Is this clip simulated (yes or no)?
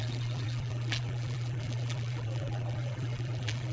yes